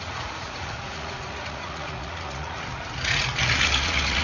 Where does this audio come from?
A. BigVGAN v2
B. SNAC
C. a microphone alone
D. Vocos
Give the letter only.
D